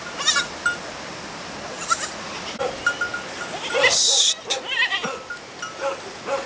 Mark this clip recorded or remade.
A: recorded